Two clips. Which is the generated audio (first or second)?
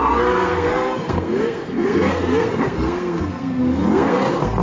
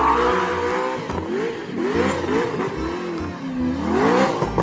first